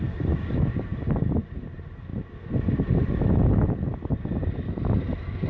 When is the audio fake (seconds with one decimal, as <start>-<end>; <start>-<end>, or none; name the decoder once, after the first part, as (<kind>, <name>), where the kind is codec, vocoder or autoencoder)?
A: 0.0-0.9 (vocoder, BigVGAN v2); 1.5-2.1